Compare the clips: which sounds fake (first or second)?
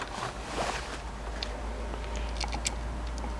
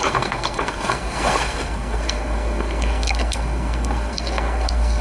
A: second